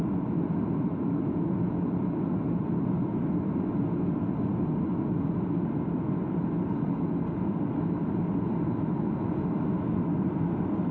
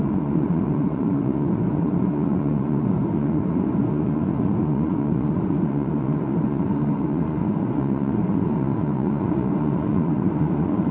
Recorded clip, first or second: first